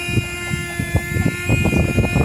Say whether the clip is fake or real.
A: real